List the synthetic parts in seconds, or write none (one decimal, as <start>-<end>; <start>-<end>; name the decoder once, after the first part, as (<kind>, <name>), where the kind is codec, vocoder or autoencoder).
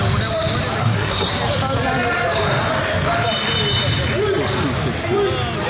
0.8-1.3 (codec, SNAC)